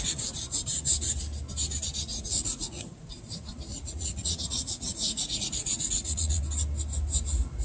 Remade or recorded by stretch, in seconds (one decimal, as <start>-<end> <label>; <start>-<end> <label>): 0.0-2.1 recorded; 2.1-2.9 remade; 2.9-3.7 recorded; 3.7-6.4 remade; 6.4-7.6 recorded